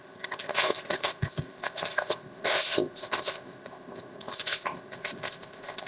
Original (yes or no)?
no